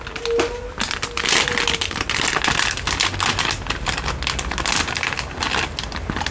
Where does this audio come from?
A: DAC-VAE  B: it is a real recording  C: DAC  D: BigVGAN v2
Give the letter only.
B